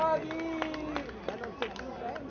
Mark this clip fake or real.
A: real